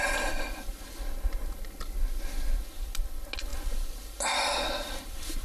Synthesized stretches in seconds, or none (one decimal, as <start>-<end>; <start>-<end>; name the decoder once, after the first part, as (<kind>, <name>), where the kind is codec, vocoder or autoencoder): none